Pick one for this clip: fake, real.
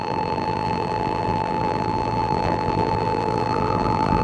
fake